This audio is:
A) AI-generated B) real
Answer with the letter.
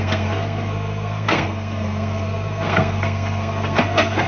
A